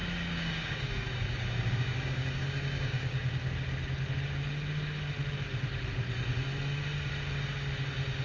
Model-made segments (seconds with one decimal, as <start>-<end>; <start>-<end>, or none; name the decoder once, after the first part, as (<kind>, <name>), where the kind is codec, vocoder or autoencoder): 0.0-3.5 (codec, DAC)